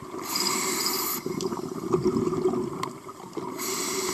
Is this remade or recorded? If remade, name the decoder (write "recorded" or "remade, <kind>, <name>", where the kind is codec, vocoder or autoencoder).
recorded